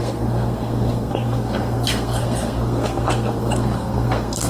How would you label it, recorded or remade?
remade